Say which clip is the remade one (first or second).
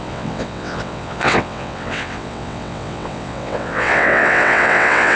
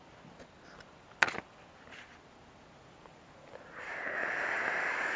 first